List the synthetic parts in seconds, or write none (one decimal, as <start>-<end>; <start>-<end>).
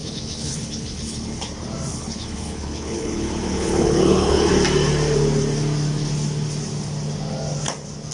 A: 0.0-1.4; 1.9-4.5